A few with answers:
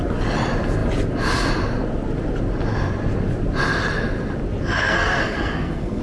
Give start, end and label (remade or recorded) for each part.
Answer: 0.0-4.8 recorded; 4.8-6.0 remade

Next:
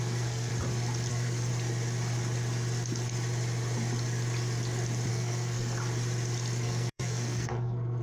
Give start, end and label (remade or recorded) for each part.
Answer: 0.0-0.5 remade; 0.5-1.1 recorded; 1.1-1.5 remade; 1.5-5.1 recorded; 5.1-5.8 remade; 5.8-6.6 recorded; 6.6-8.0 remade

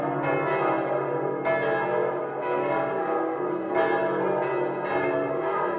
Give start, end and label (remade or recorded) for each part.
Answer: 0.0-2.2 recorded; 2.2-3.7 remade; 3.7-5.0 recorded; 5.0-5.8 remade

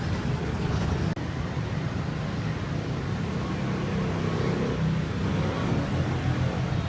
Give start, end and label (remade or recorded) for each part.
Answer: 0.0-0.4 recorded; 0.4-0.9 remade; 0.9-6.9 recorded

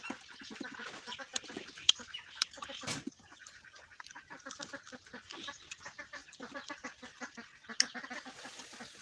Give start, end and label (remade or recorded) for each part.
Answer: 0.0-9.0 recorded

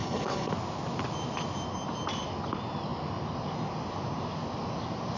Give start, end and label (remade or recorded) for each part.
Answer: 0.0-0.5 remade; 0.5-5.2 recorded

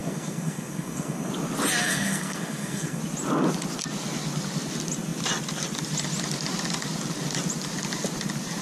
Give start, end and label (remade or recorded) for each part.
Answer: 0.0-1.3 remade; 1.3-1.8 recorded; 1.8-3.0 remade; 3.0-8.6 recorded

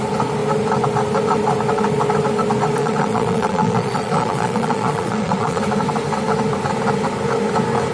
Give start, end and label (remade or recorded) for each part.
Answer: 0.0-2.8 recorded; 2.8-5.6 remade; 5.6-7.9 recorded